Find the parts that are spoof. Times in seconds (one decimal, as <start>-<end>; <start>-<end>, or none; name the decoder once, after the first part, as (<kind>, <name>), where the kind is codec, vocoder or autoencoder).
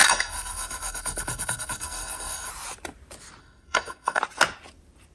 0.0-2.5 (codec, SNAC); 3.4-4.2